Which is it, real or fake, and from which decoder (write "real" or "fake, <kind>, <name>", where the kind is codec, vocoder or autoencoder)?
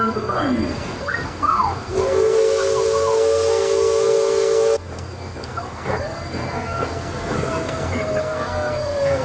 fake, codec, SNAC